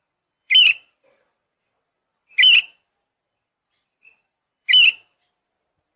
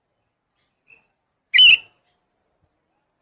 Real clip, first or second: second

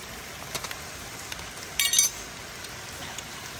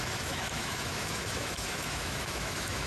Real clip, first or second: first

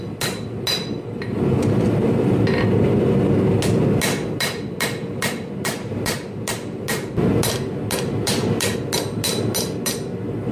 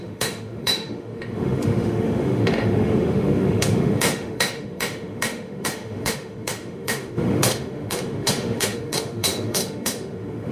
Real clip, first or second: first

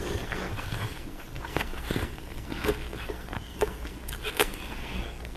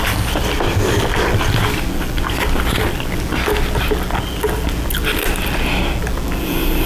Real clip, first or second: second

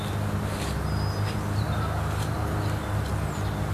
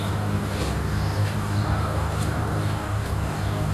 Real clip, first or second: first